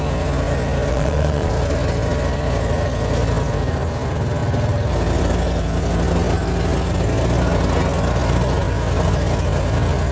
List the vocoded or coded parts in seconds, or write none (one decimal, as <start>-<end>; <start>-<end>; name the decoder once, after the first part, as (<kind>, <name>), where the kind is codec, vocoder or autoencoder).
0.9-1.5 (vocoder, Vocos)